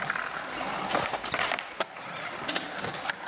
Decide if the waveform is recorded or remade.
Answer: recorded